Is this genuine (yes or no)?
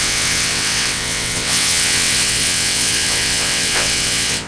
no